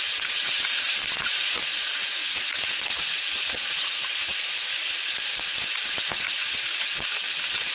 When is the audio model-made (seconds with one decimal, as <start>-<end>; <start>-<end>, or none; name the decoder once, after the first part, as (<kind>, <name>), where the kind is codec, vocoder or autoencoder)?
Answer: 2.2-6.8 (vocoder, Vocos)